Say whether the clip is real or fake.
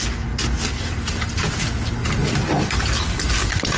real